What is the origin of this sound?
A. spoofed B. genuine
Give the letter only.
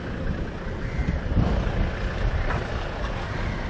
B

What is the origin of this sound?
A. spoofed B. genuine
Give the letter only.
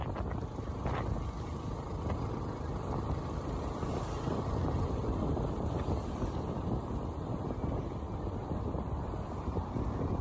B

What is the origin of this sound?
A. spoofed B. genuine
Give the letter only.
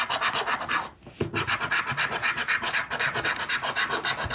B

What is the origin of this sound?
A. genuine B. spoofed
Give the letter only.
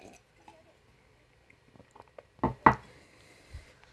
A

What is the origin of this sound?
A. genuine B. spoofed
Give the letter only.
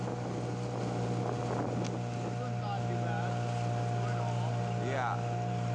A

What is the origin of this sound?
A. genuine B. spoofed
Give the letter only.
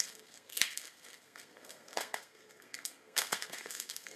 B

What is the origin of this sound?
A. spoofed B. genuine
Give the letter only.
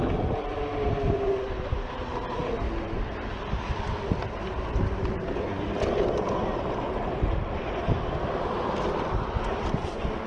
B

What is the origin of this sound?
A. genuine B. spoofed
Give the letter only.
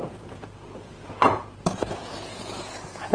B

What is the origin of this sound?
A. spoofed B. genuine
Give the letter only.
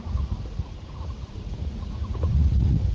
A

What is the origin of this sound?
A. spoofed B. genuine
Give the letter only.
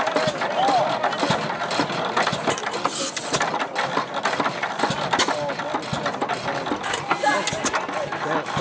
B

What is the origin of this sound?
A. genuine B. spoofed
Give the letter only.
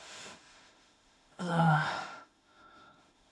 B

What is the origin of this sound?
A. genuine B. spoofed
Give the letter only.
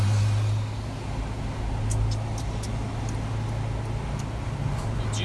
A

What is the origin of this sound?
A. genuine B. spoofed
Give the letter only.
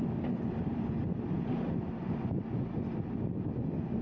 A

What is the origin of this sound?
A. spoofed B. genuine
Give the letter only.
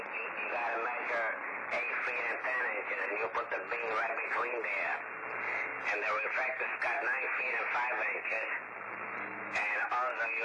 B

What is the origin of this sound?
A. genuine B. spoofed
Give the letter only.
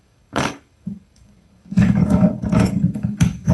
B